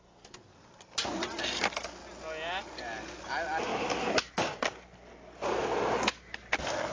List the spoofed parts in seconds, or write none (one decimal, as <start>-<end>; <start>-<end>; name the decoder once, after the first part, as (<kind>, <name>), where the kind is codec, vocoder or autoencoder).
none

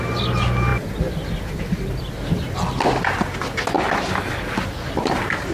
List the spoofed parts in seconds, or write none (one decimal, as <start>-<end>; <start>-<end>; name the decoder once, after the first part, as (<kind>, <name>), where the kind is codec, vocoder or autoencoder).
none

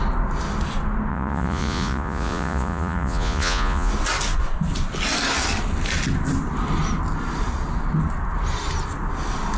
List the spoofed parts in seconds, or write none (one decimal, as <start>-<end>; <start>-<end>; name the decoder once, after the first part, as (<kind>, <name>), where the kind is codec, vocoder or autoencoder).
1.1-3.9 (vocoder, Vocos)

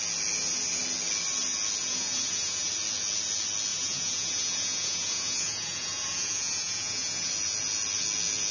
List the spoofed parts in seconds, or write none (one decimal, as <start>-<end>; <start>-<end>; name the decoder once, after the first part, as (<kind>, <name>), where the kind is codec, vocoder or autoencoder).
1.8-2.7 (vocoder, Vocos); 3.7-7.3

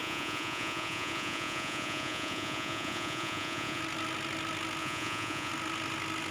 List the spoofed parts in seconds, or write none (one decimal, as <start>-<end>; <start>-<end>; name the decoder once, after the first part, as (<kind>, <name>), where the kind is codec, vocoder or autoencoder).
0.0-3.8 (vocoder, Vocos); 4.8-5.5

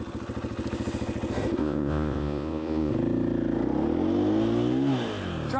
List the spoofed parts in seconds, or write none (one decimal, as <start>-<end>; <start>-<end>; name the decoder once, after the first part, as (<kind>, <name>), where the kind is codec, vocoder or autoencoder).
1.6-2.9 (vocoder, Vocos)

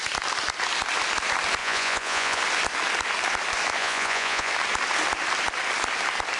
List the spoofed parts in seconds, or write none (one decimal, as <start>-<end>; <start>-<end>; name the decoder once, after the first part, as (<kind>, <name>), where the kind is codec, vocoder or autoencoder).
1.6-2.4 (vocoder, Vocos); 3.8-4.5

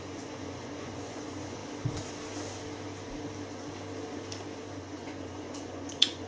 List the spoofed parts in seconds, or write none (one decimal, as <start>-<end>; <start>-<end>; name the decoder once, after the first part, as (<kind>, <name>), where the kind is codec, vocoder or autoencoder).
0.0-1.6 (vocoder, Vocos); 4.8-6.3